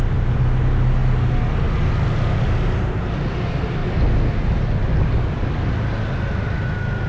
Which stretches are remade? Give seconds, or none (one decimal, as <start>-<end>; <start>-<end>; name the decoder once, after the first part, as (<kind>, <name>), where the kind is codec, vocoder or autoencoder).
none